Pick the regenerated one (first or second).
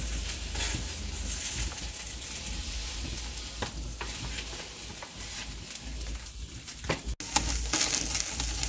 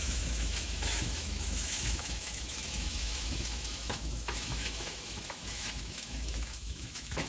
second